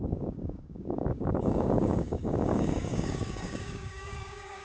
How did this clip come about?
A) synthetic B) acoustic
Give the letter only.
A